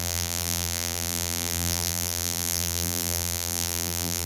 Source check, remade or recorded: remade